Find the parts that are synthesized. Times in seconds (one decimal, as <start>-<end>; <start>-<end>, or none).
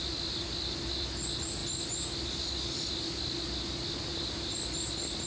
none